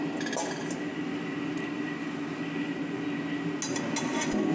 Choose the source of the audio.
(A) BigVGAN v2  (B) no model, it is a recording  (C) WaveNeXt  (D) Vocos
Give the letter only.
B